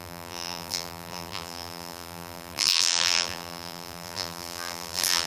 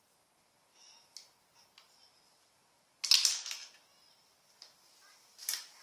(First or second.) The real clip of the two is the second